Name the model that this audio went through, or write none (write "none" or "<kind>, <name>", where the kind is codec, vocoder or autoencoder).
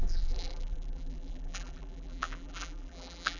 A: vocoder, BigVGAN v2